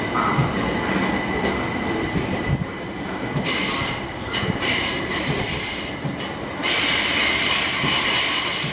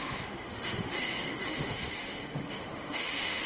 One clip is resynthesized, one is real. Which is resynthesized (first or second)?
second